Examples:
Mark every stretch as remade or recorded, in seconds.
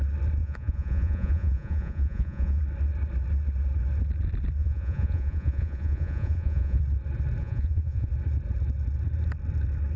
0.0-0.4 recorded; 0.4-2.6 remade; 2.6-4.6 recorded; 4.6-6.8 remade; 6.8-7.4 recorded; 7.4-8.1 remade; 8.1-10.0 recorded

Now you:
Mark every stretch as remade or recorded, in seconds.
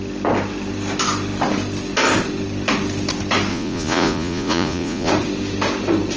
0.0-3.5 recorded; 3.5-5.1 remade; 5.1-6.2 recorded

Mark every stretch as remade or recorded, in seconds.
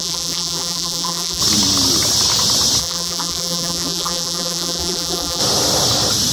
0.0-1.4 remade; 1.4-2.8 recorded; 2.8-5.4 remade; 5.4-6.3 recorded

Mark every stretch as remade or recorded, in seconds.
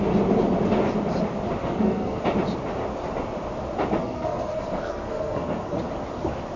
0.0-1.6 recorded; 1.6-2.2 remade; 2.2-4.0 recorded; 4.0-5.8 remade; 5.8-6.6 recorded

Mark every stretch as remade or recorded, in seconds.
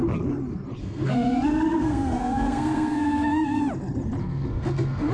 0.0-0.8 recorded; 0.8-3.6 remade; 3.6-4.2 recorded; 4.2-5.1 remade